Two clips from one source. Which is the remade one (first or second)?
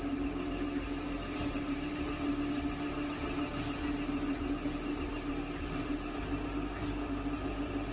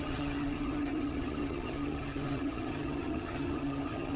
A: second